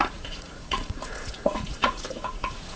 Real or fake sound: fake